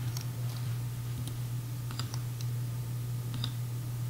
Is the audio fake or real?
real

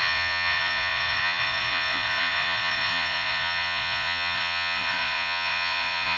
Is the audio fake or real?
fake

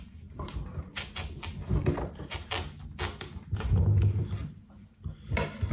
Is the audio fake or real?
real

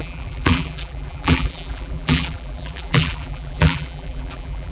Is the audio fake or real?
fake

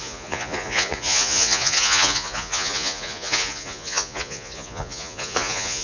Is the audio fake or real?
fake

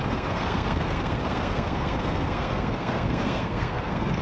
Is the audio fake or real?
fake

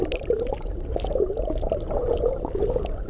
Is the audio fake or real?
real